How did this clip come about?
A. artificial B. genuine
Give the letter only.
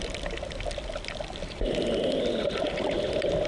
B